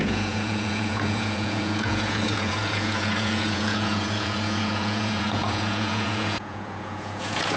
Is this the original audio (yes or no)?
no